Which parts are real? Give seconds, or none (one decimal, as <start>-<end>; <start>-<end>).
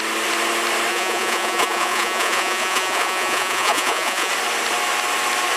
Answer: 0.0-0.9; 4.3-5.6